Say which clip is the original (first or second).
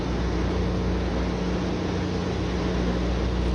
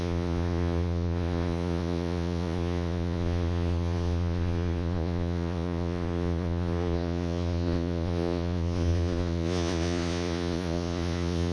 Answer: first